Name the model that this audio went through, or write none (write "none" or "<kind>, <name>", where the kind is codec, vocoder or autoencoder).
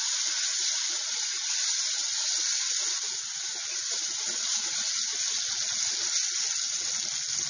none